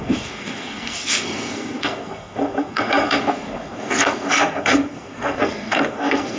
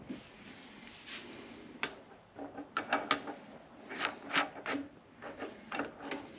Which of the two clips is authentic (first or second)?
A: second